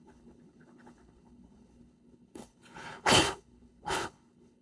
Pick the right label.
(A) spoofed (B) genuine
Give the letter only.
A